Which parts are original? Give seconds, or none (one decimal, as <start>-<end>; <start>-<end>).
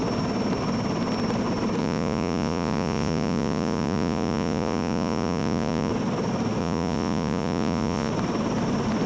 0.0-1.8; 5.9-6.6; 8.1-9.1